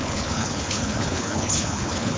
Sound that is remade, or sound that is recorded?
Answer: remade